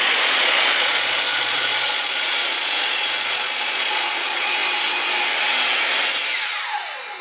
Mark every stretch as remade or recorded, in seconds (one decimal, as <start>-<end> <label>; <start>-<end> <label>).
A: 0.0-4.6 remade; 4.6-7.2 recorded